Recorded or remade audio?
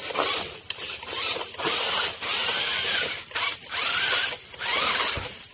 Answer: remade